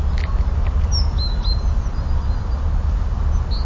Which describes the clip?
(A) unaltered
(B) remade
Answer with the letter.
A